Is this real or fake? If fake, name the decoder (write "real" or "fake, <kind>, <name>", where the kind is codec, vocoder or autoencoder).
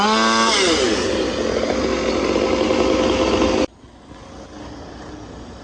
real